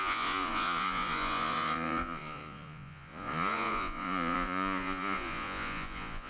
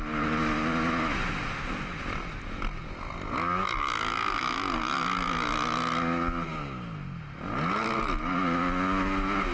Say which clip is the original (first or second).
second